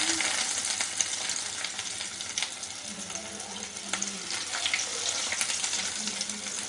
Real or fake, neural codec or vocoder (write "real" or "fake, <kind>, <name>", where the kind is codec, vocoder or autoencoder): fake, vocoder, BigVGAN v2